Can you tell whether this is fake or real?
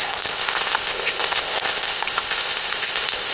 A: fake